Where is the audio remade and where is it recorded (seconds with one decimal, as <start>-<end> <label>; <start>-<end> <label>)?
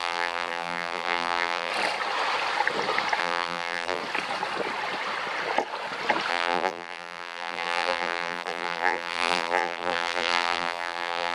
0.0-1.7 remade; 1.7-3.2 recorded; 3.2-4.0 remade; 4.0-6.3 recorded; 6.3-11.3 remade